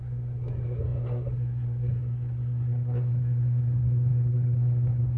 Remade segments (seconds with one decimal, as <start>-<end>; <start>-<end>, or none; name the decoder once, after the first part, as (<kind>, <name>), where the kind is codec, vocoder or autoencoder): 0.0-5.2 (codec, SNAC)